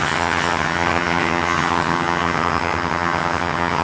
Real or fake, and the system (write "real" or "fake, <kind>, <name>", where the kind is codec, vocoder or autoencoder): fake, vocoder, HiFi-GAN